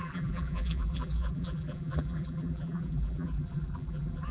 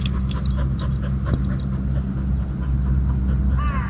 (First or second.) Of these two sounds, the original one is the second